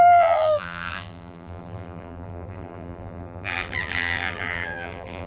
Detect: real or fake fake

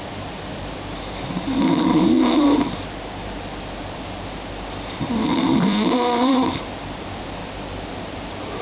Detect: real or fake fake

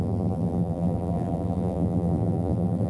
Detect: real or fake fake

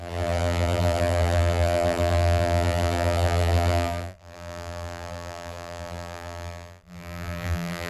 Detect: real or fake fake